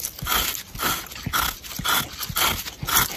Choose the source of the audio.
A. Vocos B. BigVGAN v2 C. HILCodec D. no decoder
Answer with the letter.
D